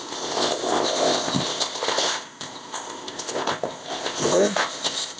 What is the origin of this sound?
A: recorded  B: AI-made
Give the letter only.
B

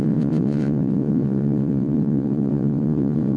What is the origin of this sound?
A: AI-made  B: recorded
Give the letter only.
A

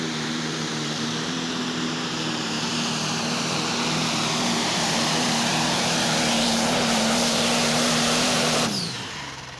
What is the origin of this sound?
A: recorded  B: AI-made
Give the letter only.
B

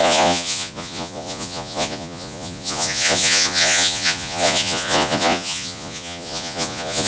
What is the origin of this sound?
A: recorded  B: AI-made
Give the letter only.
B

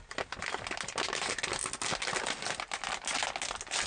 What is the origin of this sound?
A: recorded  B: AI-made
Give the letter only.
A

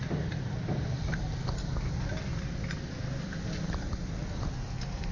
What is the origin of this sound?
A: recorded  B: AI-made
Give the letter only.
A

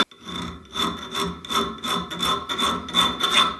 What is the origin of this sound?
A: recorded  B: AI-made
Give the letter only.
A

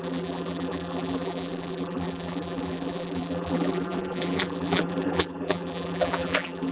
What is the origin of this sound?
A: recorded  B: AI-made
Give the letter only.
B